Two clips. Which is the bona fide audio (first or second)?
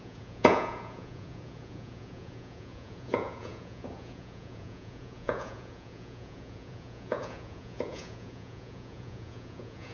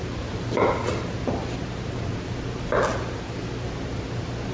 second